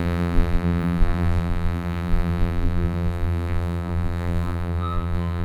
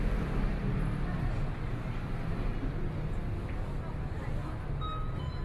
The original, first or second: second